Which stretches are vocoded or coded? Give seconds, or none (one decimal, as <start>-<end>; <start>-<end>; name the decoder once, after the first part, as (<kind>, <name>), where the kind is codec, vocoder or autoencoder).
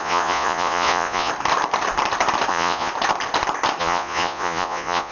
0.0-1.3 (vocoder, Vocos); 2.5-2.9; 3.8-5.1